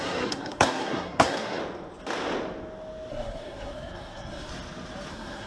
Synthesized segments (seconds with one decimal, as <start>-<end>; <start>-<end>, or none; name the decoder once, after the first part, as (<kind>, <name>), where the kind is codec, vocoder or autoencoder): 0.0-1.6 (codec, SNAC); 3.1-4.5; 5.1-5.5